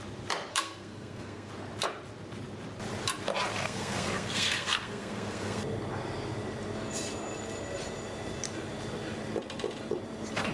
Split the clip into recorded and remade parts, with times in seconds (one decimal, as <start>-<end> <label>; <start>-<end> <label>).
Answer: 0.0-0.5 recorded; 0.5-1.5 remade; 1.5-3.5 recorded; 3.5-5.6 remade; 5.6-10.5 recorded